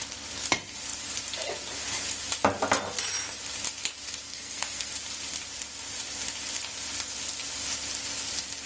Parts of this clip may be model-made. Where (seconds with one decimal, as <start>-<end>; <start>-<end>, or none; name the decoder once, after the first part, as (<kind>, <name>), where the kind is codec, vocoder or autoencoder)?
4.3-4.9 (codec, SNAC)